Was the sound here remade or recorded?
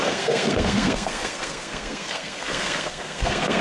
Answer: remade